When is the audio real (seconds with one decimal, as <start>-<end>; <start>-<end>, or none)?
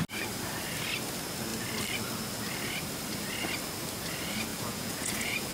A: 0.0-4.5